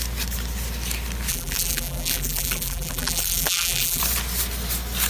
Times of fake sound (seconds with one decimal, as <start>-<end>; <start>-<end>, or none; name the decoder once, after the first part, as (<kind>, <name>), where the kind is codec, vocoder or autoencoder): 1.3-4.0 (vocoder, BigVGAN v2)

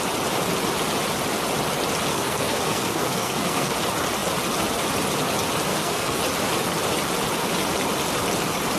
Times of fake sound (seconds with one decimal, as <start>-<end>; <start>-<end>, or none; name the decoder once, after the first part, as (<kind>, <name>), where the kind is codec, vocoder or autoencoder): 2.1-3.7 (codec, SNAC); 5.7-6.2

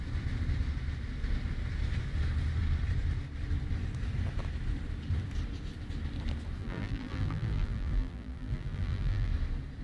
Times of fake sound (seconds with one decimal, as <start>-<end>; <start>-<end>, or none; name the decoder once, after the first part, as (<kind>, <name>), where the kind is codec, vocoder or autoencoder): 6.6-9.3 (vocoder, BigVGAN v2)

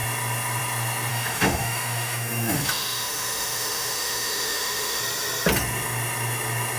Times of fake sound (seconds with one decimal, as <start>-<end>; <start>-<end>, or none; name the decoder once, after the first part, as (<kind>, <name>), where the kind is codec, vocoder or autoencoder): 1.1-5.0 (autoencoder, DAC-VAE)

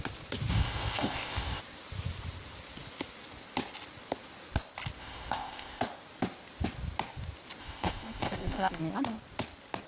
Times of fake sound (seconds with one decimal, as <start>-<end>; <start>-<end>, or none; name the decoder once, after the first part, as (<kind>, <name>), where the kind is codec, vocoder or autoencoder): 0.5-1.6 (codec, ZipCodec); 5.0-5.8; 7.6-8.8

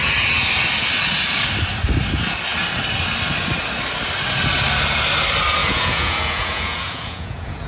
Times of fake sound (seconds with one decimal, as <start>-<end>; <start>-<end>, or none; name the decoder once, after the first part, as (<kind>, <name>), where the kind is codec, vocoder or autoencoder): 5.6-7.7 (vocoder, Vocos)

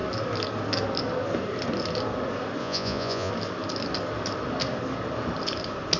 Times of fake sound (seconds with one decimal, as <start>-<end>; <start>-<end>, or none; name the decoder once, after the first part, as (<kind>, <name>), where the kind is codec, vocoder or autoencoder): 2.6-3.3 (vocoder, Vocos)